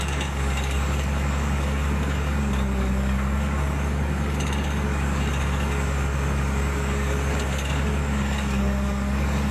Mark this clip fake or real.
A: fake